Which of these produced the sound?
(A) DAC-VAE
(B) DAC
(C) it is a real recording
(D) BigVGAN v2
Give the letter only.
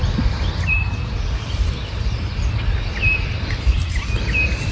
C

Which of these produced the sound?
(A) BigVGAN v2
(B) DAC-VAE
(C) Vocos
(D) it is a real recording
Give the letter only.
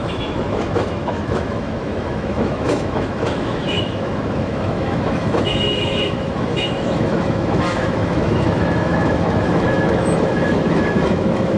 B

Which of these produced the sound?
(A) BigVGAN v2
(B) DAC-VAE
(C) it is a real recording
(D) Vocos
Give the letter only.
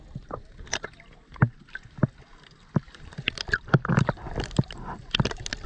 C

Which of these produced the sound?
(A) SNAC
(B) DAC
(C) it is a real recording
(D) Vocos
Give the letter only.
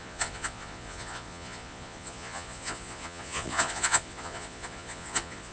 D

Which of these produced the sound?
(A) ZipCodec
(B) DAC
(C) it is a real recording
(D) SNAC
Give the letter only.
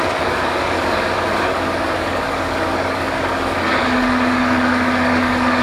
B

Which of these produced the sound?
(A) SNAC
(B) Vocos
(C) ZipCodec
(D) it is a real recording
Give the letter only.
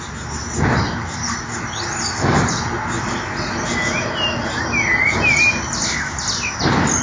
D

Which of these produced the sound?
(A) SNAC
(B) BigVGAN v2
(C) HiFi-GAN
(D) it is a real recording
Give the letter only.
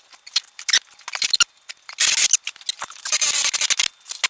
D